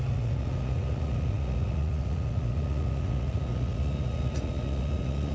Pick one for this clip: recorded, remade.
remade